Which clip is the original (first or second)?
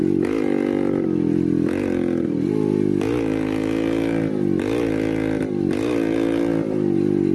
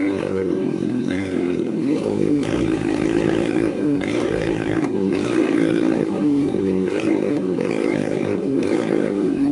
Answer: first